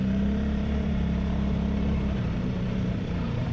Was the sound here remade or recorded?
remade